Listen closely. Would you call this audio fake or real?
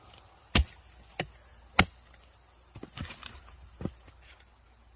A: real